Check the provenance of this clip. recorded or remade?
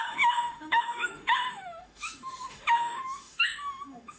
remade